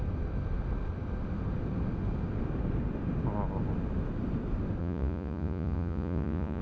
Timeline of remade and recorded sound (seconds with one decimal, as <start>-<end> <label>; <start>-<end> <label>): 0.0-4.8 recorded; 4.8-6.6 remade